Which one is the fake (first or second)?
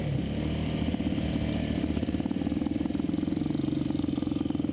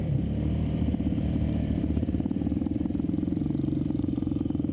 second